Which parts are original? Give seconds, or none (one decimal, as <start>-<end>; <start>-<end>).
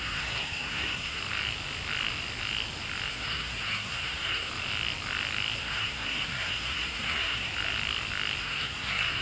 1.2-3.1; 4.5-5.6; 7.5-8.4